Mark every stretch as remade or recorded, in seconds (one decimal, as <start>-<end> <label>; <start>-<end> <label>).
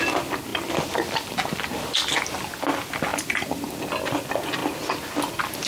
0.0-5.7 recorded